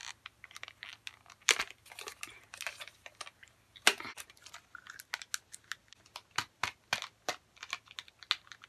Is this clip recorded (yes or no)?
yes